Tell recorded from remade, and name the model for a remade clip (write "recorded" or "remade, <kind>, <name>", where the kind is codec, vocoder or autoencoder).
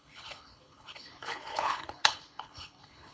remade, codec, HILCodec